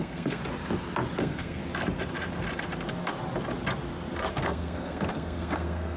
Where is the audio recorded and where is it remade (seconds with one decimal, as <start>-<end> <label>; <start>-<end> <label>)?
0.0-0.4 remade; 0.4-1.2 recorded; 1.2-1.6 remade; 1.6-4.3 recorded; 4.3-6.0 remade